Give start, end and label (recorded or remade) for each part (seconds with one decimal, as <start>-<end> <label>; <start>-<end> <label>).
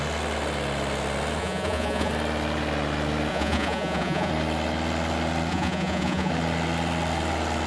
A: 0.0-1.4 recorded; 1.4-2.1 remade; 2.1-3.3 recorded; 3.3-4.3 remade; 4.3-5.5 recorded; 5.5-6.3 remade; 6.3-7.7 recorded